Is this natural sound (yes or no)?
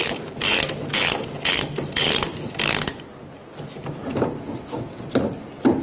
yes